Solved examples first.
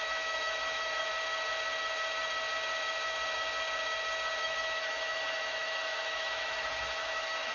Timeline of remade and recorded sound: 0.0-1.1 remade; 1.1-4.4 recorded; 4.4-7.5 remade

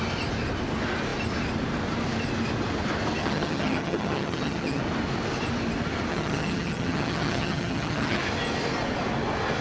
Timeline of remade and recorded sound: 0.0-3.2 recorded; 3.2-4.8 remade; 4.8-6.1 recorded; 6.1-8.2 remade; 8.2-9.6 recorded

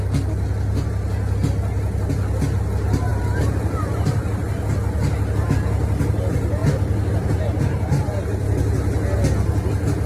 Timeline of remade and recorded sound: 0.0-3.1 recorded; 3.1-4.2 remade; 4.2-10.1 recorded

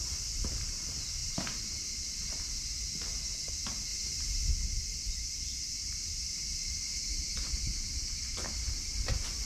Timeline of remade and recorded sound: 0.0-1.2 recorded; 1.2-2.4 remade; 2.4-3.9 recorded; 3.9-4.5 remade; 4.5-5.8 recorded; 5.8-7.3 remade; 7.3-9.5 recorded

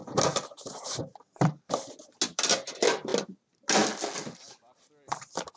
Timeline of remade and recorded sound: 0.0-1.0 remade; 1.0-5.6 recorded